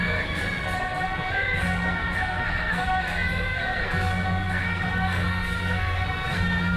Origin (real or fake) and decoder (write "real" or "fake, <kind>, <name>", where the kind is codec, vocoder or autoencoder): fake, codec, SNAC